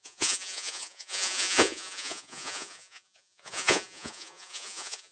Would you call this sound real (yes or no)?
no